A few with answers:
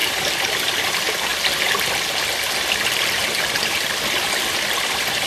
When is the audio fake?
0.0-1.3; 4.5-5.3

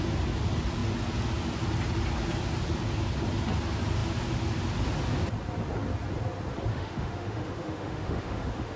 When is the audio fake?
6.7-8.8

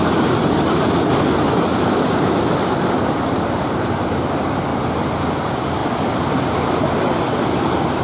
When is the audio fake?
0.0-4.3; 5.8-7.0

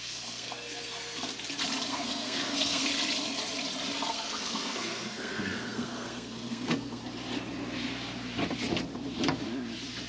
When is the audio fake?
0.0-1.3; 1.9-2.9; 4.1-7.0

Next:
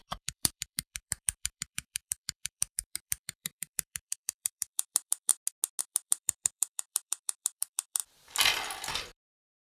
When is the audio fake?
0.0-5.3; 5.8-9.8